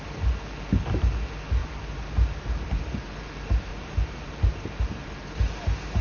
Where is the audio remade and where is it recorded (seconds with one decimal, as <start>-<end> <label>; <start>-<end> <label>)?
0.0-1.6 recorded; 1.6-3.1 remade; 3.1-3.7 recorded; 3.7-5.5 remade; 5.5-6.0 recorded